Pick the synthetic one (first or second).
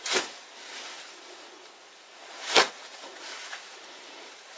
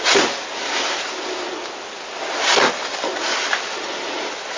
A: first